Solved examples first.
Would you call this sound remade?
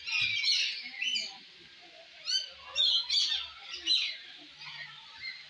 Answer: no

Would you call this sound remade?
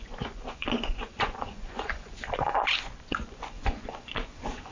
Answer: yes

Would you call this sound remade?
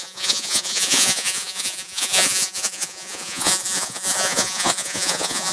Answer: yes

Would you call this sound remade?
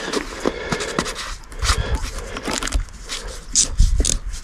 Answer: no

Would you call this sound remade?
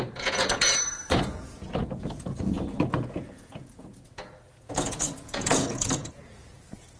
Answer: yes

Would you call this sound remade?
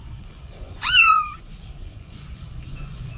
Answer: yes